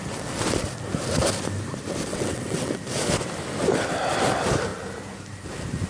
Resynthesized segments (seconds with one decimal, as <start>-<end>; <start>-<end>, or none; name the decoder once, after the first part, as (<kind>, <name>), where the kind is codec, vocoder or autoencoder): 2.1-2.7 (vocoder, WaveNeXt)